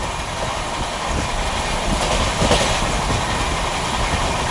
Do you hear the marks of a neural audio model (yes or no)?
no